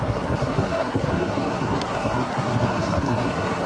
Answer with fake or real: fake